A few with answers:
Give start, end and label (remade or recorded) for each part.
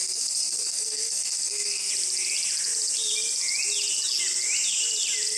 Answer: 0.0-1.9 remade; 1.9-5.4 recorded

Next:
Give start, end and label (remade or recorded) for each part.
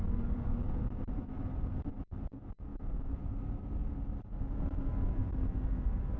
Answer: 0.0-6.2 recorded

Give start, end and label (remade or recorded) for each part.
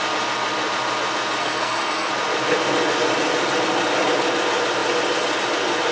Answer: 0.0-1.4 recorded; 1.4-2.1 remade; 2.1-5.9 recorded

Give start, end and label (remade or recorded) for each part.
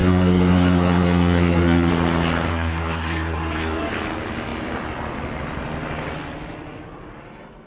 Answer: 0.0-1.9 remade; 1.9-2.5 recorded; 2.5-3.9 remade; 3.9-7.7 recorded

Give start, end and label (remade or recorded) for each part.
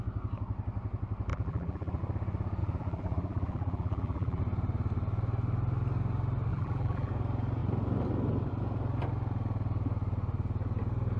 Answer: 0.0-1.3 recorded; 1.3-2.0 remade; 2.0-2.6 recorded; 2.6-4.4 remade; 4.4-6.5 recorded; 6.5-7.1 remade; 7.1-11.2 recorded